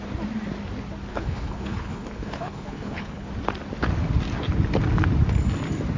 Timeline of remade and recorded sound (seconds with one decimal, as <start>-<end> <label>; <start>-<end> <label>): 0.0-1.1 recorded; 1.1-3.3 remade; 3.3-6.0 recorded